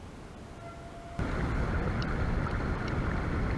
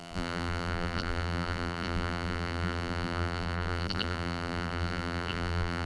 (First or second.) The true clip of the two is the first